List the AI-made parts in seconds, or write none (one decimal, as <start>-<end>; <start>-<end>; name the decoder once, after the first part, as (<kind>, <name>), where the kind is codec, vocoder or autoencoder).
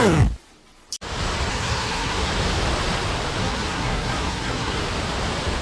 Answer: 1.5-2.3 (codec, SNAC); 3.4-4.8